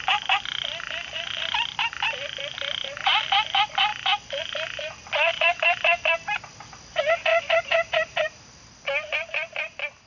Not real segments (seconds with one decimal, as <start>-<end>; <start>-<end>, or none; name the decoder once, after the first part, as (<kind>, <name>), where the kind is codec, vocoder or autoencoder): 5.3-6.0 (vocoder, BigVGAN v2); 7.3-8.5